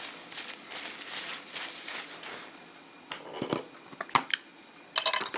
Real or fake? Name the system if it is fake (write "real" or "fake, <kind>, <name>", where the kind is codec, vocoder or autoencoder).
real